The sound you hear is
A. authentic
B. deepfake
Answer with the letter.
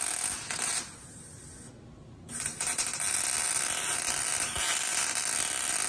A